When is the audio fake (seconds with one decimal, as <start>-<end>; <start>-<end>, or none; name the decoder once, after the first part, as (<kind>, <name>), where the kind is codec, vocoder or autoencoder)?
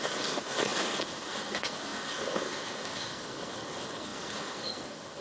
0.0-5.2 (codec, SNAC)